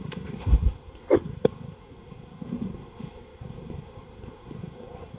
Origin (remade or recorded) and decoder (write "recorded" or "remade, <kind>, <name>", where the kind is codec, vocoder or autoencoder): remade, codec, SNAC